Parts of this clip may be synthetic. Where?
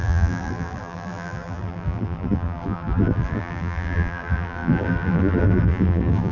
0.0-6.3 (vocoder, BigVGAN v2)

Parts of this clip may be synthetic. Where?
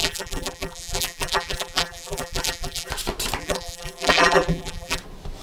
0.0-2.9 (vocoder, BigVGAN v2); 3.4-5.0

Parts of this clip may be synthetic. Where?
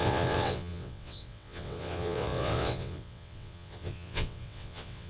0.0-5.1 (vocoder, WaveNeXt)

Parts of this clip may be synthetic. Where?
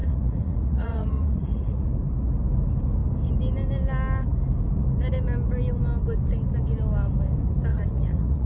0.0-1.9 (vocoder, Vocos); 7.7-8.5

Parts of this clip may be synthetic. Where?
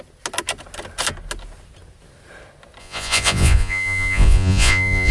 2.8-5.1 (vocoder, Vocos)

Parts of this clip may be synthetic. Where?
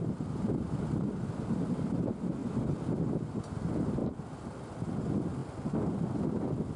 none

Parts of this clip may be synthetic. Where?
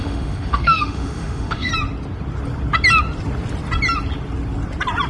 0.0-1.7 (autoencoder, DAC-VAE)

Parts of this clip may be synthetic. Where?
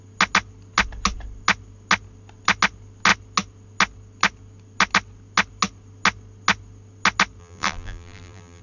7.4-8.6 (vocoder, BigVGAN v2)